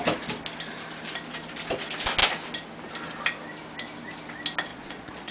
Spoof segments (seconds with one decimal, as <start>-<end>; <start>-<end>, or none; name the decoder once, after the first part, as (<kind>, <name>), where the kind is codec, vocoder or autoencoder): 4.7-5.3 (vocoder, Vocos)